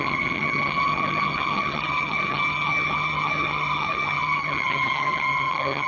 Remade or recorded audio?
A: remade